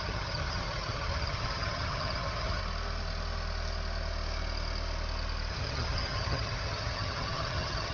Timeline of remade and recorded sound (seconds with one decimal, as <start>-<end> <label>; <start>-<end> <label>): 0.0-2.6 remade; 2.6-5.5 recorded; 5.5-7.9 remade